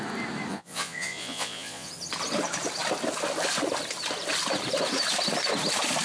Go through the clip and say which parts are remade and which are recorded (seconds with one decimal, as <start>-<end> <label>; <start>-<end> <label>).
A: 0.0-0.5 recorded; 0.5-1.9 remade; 1.9-6.0 recorded